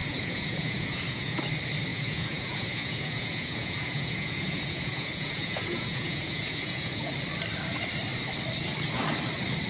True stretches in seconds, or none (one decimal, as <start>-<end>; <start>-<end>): 1.4-1.9; 7.1-9.7